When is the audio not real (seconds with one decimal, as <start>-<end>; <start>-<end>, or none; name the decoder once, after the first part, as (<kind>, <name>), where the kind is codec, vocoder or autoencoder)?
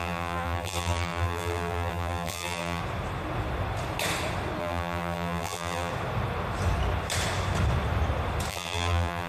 0.0-2.8 (vocoder, BigVGAN v2); 4.6-5.9; 8.5-9.3